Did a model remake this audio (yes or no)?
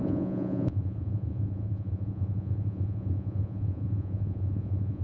yes